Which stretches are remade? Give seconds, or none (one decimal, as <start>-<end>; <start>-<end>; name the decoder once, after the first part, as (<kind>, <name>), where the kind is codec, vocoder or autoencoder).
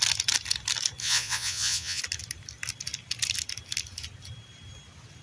1.0-2.0 (vocoder, Vocos)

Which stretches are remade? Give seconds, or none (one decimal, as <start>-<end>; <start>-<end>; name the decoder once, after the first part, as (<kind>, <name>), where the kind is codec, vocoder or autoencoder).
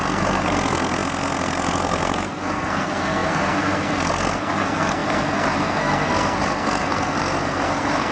0.0-8.1 (codec, SNAC)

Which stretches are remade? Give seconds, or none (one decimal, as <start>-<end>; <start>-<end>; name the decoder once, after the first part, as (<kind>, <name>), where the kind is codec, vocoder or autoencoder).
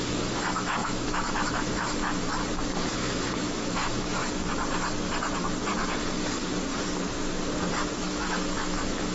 0.0-2.3 (autoencoder, DAC-VAE); 2.9-4.2; 8.1-9.1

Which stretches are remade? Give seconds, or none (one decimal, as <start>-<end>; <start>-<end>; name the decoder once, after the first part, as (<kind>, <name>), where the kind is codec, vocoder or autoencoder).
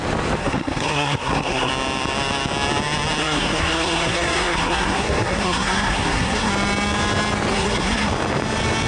0.4-1.7 (codec, SNAC); 3.2-6.5; 7.5-8.1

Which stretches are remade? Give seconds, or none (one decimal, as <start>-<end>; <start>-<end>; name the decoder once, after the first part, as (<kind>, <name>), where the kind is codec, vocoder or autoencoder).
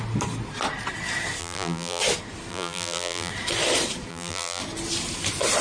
1.4-2.0 (vocoder, BigVGAN v2); 2.5-3.3; 4.1-4.6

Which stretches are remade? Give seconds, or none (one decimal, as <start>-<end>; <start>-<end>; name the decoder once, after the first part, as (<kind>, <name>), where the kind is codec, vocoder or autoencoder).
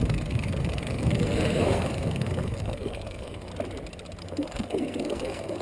0.0-3.5 (codec, SNAC); 4.2-5.6